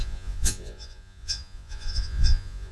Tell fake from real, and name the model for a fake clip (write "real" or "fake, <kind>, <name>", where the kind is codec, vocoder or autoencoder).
fake, vocoder, Vocos